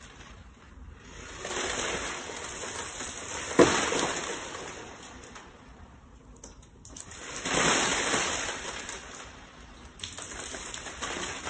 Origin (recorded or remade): recorded